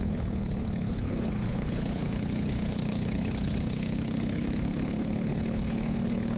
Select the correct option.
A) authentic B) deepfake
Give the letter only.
B